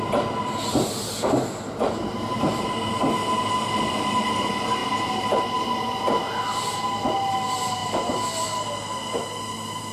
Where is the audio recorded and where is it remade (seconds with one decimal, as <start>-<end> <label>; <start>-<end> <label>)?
0.0-9.9 recorded